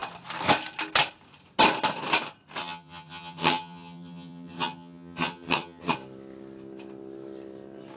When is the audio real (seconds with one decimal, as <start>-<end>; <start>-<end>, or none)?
0.0-2.6; 5.9-8.0